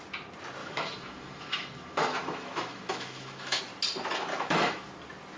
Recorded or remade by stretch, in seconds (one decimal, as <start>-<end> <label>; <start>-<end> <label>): 0.0-0.6 recorded; 0.6-3.6 remade; 3.6-4.3 recorded; 4.3-4.9 remade; 4.9-5.4 recorded

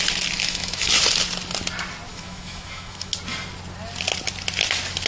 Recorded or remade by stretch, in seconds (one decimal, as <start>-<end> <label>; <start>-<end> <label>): 0.0-0.4 recorded; 0.4-1.0 remade; 1.0-2.1 recorded; 2.1-3.1 remade; 3.1-5.1 recorded

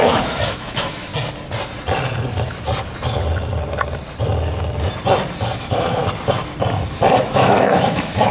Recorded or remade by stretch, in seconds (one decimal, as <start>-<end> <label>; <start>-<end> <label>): 0.0-1.1 remade; 1.1-5.6 recorded; 5.6-6.0 remade; 6.0-7.2 recorded; 7.2-8.3 remade

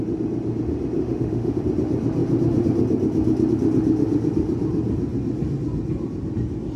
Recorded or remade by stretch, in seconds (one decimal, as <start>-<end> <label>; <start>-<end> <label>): 0.0-1.0 recorded; 1.0-1.6 remade; 1.6-6.8 recorded

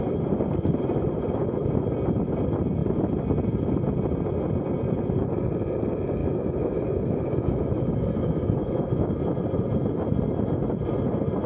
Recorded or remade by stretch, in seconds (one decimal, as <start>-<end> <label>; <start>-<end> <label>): 0.0-6.2 recorded; 6.2-9.1 remade; 9.1-11.5 recorded